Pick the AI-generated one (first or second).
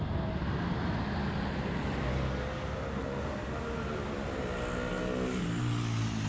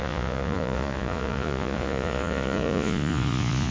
second